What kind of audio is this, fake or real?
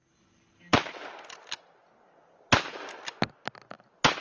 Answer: real